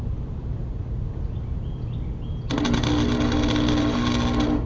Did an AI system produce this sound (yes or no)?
no